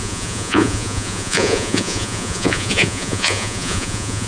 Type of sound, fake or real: fake